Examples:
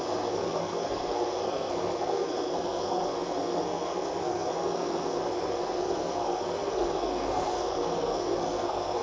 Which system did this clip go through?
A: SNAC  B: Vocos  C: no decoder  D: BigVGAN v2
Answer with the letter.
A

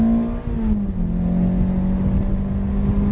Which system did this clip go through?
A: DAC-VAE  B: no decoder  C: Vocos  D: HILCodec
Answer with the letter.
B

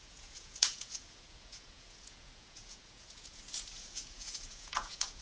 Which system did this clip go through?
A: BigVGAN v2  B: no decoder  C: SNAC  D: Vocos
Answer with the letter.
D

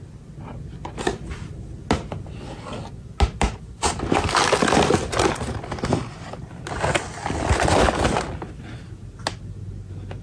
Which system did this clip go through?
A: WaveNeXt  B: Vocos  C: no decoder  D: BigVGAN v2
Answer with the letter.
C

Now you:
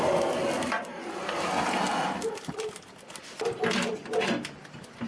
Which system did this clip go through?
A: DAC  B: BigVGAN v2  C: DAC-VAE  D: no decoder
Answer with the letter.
D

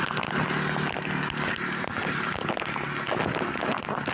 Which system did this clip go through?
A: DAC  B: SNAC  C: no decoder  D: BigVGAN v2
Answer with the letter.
C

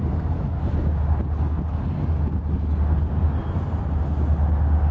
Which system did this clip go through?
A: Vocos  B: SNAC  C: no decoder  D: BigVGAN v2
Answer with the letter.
C